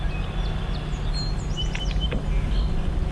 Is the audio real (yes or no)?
yes